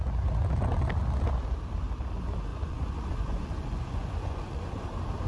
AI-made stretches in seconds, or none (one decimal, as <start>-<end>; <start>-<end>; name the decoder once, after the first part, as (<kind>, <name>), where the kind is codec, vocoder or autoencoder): 2.5-4.6 (vocoder, Vocos)

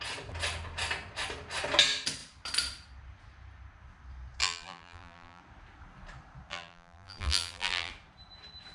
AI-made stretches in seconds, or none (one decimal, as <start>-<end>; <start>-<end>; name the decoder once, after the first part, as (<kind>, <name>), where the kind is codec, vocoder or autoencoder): 4.4-5.4 (vocoder, BigVGAN v2); 6.5-7.9

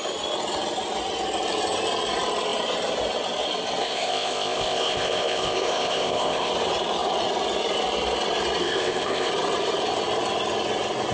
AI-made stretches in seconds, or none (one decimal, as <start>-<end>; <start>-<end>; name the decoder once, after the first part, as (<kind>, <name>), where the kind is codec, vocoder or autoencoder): 3.8-6.5 (codec, ZipCodec); 8.6-9.3

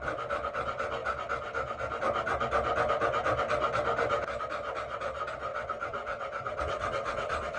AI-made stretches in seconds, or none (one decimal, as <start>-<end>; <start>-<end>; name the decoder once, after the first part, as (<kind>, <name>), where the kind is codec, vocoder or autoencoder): 5.5-7.6 (vocoder, WaveNeXt)

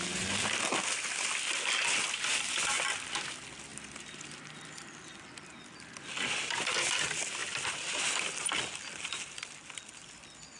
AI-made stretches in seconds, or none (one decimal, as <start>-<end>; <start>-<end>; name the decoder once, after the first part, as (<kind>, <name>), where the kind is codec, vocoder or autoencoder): 3.7-4.4 (vocoder, BigVGAN v2)

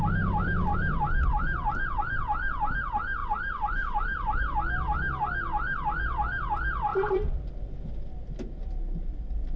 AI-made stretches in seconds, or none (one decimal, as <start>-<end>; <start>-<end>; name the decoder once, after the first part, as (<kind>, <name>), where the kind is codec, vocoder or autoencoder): 0.7-2.0 (vocoder, BigVGAN v2); 3.2-4.4; 6.9-7.5

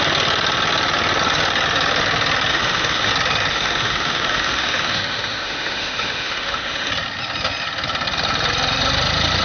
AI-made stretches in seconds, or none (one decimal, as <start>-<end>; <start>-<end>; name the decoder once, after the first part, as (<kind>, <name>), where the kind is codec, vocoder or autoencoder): 2.5-3.1 (autoencoder, DAC-VAE); 3.5-6.9